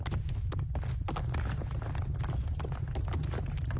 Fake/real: real